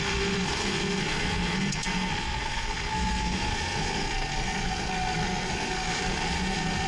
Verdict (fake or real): fake